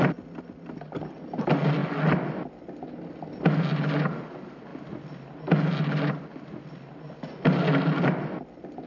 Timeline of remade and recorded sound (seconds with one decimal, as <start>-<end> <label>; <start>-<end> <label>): 0.0-8.9 recorded